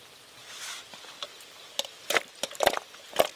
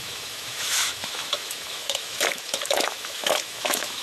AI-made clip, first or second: second